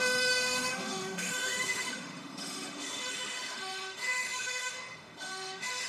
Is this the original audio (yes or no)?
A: no